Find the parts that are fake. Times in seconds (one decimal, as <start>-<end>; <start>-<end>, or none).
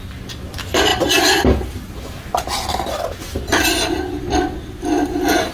none